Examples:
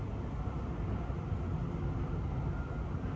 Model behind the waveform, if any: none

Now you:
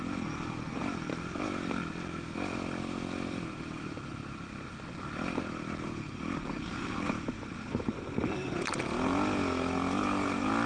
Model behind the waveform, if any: none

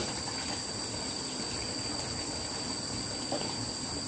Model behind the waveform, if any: none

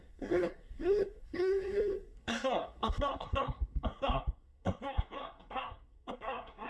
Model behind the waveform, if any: codec, SNAC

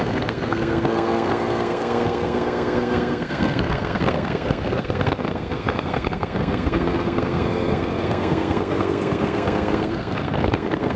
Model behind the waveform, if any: codec, SNAC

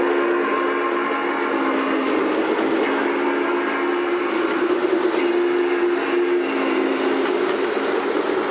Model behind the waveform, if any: none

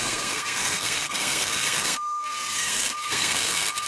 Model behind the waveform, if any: codec, SNAC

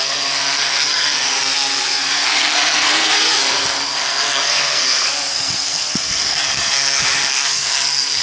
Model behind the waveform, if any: codec, SNAC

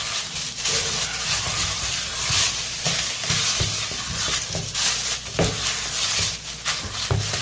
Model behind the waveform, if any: none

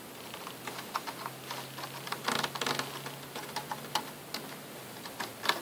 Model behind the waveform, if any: none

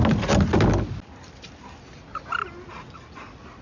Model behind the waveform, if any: none